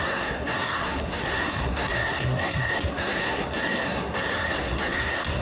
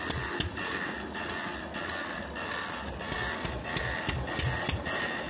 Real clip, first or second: second